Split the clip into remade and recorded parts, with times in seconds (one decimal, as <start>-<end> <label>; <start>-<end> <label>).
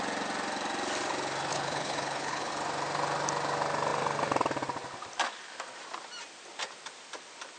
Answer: 0.0-1.5 recorded; 1.5-2.5 remade; 2.5-7.6 recorded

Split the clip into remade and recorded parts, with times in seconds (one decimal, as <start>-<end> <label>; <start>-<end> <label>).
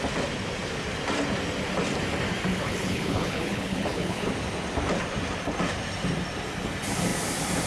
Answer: 0.0-2.5 recorded; 2.5-4.3 remade; 4.3-7.7 recorded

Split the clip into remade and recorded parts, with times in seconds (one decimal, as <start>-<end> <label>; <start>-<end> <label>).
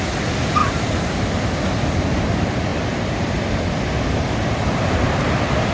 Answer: 0.0-5.7 recorded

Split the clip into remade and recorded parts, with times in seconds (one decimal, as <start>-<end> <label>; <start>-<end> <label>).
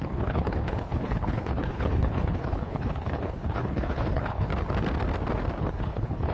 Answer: 0.0-4.5 remade; 4.5-5.6 recorded; 5.6-6.3 remade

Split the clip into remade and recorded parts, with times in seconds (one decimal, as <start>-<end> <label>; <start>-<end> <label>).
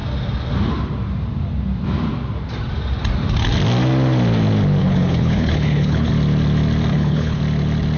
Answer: 0.0-4.8 recorded; 4.8-6.1 remade; 6.1-6.9 recorded; 6.9-7.4 remade; 7.4-8.0 recorded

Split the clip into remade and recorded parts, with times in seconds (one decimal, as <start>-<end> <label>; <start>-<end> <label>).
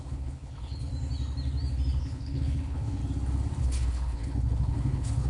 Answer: 0.0-0.9 remade; 0.9-2.0 recorded; 2.0-3.0 remade; 3.0-3.6 recorded; 3.6-5.3 remade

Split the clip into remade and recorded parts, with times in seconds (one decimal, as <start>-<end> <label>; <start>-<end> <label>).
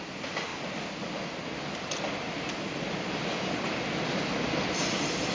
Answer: 0.0-5.3 recorded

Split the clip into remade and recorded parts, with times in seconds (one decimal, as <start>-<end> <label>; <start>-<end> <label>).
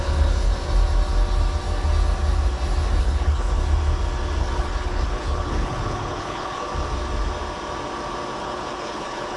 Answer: 0.0-0.5 remade; 0.5-3.0 recorded; 3.0-3.6 remade; 3.6-4.4 recorded; 4.4-6.7 remade; 6.7-8.4 recorded; 8.4-9.4 remade